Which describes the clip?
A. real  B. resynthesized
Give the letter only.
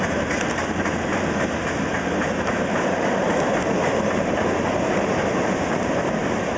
B